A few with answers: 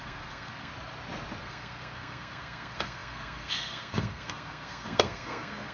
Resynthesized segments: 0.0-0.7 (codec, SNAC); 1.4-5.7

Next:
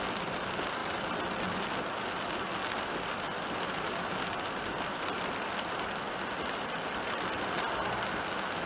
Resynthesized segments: none

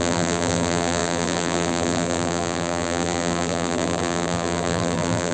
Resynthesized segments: 0.0-5.3 (vocoder, BigVGAN v2)

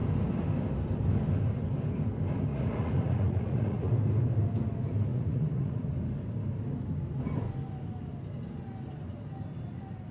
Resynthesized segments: 2.5-3.9 (vocoder, Vocos); 5.1-5.8

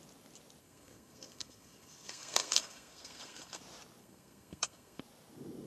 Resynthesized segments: 0.6-3.6 (codec, SNAC); 4.0-5.0